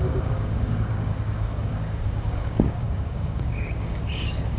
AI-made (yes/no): yes